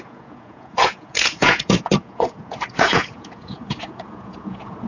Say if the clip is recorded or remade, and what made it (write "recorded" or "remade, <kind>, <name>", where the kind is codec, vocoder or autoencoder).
remade, vocoder, Vocos